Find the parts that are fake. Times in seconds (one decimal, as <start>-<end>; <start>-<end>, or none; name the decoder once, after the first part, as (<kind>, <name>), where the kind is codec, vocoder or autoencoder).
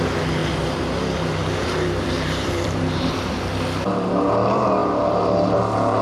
0.4-3.3 (vocoder, BigVGAN v2); 4.8-5.6